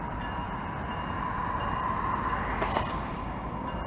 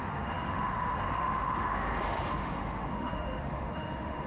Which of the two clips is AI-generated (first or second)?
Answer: second